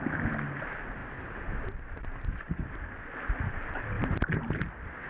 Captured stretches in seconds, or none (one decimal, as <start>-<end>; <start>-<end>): 0.0-5.1